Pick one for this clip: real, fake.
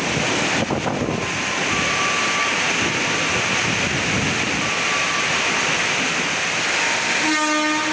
real